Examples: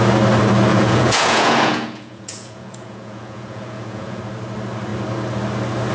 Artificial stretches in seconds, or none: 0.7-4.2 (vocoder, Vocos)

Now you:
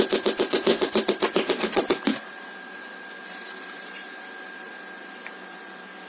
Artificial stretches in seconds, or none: 0.7-4.4 (vocoder, BigVGAN v2)

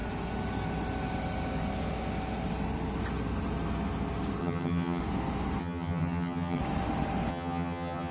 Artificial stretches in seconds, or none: 4.4-5.0 (vocoder, HiFi-GAN); 5.6-6.6; 7.3-8.1

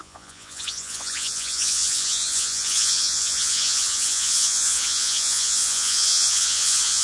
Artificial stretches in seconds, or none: 0.0-7.0 (vocoder, Vocos)

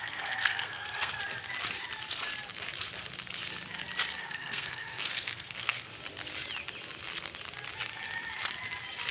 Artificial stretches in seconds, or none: 0.0-1.2 (codec, SNAC); 4.2-5.9

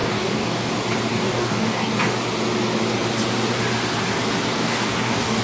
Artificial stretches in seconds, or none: 0.0-0.7 (codec, DAC); 1.1-1.9; 4.5-5.4

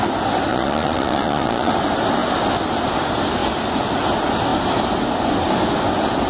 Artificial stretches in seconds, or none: 0.5-1.7 (vocoder, Vocos)